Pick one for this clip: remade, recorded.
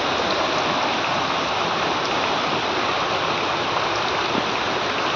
recorded